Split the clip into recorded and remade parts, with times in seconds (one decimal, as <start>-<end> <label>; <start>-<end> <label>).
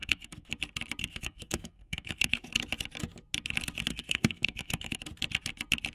0.0-0.5 remade; 0.5-1.0 recorded; 1.0-2.5 remade; 2.5-3.9 recorded; 3.9-5.0 remade; 5.0-5.9 recorded